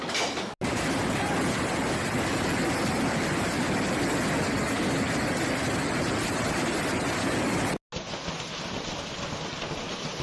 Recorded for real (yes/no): yes